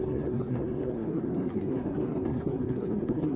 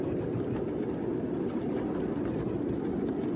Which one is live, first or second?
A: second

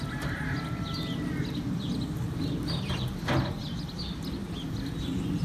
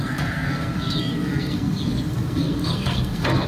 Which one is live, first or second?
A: first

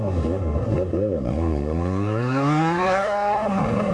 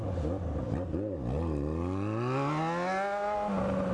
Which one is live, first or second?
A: second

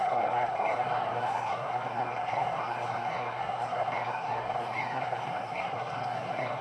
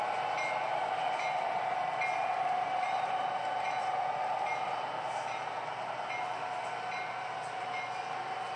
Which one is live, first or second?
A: second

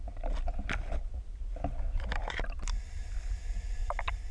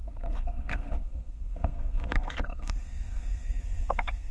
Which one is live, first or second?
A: first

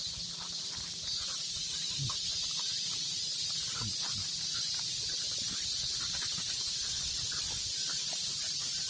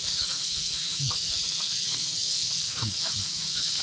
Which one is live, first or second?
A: first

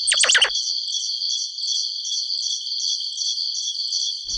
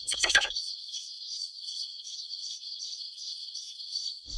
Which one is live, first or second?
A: first